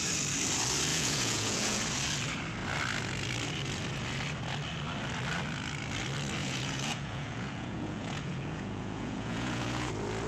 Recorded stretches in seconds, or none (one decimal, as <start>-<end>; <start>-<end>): 0.0-0.9; 1.8-6.4; 9.9-10.3